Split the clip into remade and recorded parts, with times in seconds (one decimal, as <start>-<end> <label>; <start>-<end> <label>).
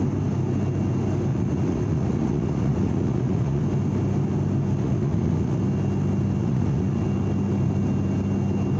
0.0-1.3 recorded; 1.3-3.6 remade; 3.6-4.8 recorded; 4.8-5.6 remade; 5.6-6.4 recorded; 6.4-7.0 remade; 7.0-8.8 recorded